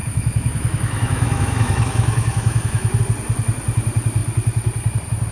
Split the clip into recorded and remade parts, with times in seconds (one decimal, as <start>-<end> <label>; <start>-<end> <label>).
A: 0.0-3.0 remade; 3.0-5.3 recorded